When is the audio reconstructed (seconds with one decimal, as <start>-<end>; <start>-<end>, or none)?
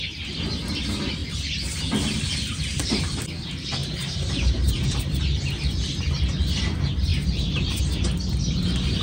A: 3.8-5.2; 7.1-7.8